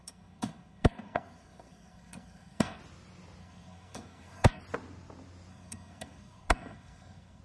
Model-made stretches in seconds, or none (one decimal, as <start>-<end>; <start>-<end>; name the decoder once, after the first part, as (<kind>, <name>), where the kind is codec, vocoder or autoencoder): 0.0-2.8 (codec, SNAC); 3.4-4.6; 5.5-7.4